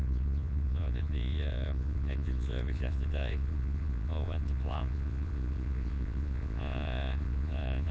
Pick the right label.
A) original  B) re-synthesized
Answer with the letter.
B